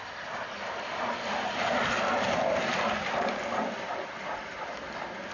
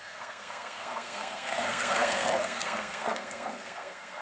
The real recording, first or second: first